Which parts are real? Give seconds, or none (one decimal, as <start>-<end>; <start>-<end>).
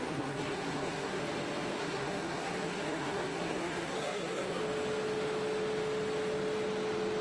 1.2-1.8; 4.6-7.2